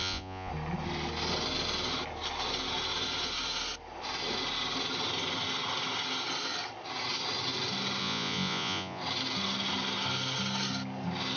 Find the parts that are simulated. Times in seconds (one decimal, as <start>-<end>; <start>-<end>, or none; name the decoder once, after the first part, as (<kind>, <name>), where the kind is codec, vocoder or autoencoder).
0.0-0.5 (vocoder, Vocos); 8.0-9.0